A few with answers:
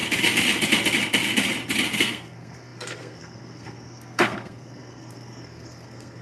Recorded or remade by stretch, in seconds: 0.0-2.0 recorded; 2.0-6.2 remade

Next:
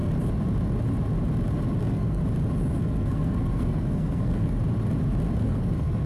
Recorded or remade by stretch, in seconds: 0.0-1.8 recorded; 1.8-2.2 remade; 2.2-2.8 recorded; 2.8-4.6 remade; 4.6-5.4 recorded; 5.4-6.1 remade